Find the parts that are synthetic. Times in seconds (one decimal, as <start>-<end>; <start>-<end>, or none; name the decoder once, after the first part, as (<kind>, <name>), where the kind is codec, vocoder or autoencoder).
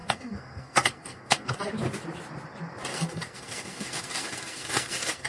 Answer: 0.0-1.6 (codec, SNAC); 2.9-5.3